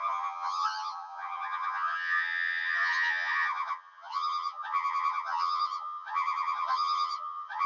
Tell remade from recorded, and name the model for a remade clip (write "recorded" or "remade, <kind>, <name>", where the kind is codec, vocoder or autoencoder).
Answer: remade, vocoder, HiFi-GAN